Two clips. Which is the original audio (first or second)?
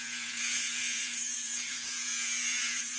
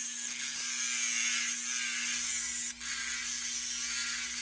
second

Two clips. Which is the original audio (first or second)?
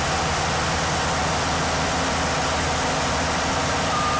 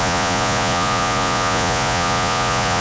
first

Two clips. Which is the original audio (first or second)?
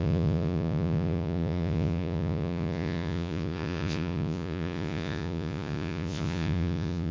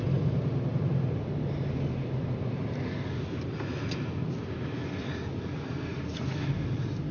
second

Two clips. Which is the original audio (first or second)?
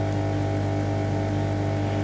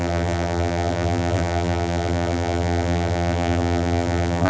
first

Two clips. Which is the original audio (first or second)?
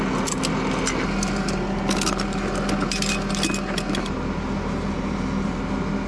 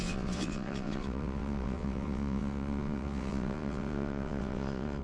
first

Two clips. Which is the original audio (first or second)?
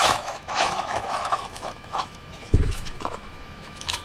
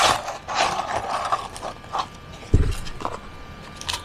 second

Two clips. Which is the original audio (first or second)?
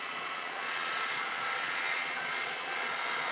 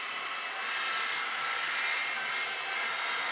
second